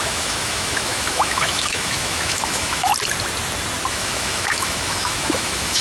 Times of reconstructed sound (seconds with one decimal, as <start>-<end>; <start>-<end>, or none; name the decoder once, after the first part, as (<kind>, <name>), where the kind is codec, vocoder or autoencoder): 0.0-2.9 (autoencoder, DAC-VAE); 3.9-5.8